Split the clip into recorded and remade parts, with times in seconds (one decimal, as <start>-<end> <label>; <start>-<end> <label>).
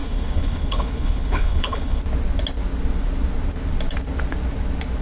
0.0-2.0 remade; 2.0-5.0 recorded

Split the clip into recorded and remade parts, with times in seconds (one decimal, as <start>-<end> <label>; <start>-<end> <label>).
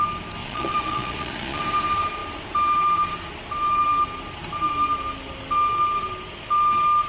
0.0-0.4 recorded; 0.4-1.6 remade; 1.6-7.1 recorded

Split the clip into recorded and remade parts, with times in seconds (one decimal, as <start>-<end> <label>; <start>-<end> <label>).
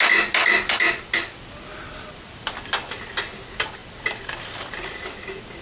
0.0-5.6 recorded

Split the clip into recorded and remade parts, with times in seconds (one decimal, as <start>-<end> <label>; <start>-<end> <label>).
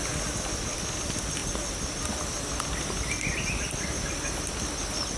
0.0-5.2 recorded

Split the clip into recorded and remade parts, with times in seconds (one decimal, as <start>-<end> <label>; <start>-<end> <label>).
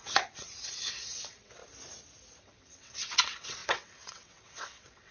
0.0-1.6 remade; 1.6-2.4 recorded; 2.4-5.1 remade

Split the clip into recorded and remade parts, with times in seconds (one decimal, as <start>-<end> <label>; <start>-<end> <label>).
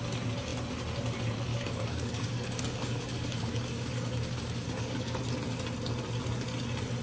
0.0-1.5 recorded; 1.5-5.2 remade; 5.2-7.0 recorded